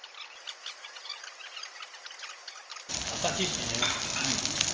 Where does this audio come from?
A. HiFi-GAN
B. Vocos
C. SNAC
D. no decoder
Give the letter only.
D